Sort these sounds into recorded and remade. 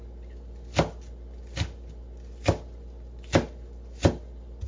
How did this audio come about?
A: recorded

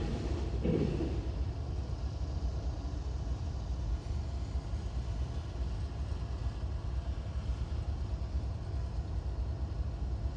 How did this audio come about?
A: recorded